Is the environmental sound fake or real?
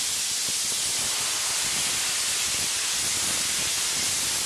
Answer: real